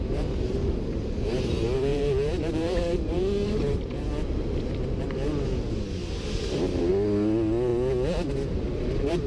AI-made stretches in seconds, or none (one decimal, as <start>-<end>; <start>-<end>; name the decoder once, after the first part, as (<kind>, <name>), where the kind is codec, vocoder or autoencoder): 1.9-3.2 (vocoder, BigVGAN v2)